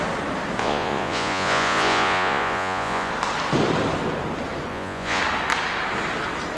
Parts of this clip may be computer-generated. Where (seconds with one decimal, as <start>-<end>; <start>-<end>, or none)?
0.6-3.1; 4.7-5.2